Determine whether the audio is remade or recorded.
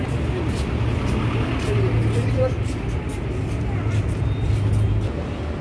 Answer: recorded